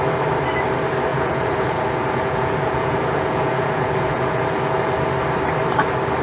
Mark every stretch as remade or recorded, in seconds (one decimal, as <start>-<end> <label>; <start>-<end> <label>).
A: 0.0-1.1 recorded; 1.1-4.8 remade; 4.8-6.2 recorded